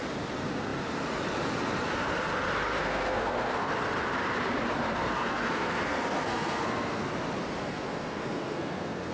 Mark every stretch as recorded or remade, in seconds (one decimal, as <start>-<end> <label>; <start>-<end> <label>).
0.0-2.8 recorded; 2.8-3.7 remade; 3.7-4.8 recorded; 4.8-7.1 remade; 7.1-7.6 recorded; 7.6-9.1 remade